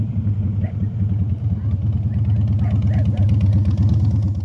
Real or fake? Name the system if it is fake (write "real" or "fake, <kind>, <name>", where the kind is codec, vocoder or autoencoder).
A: real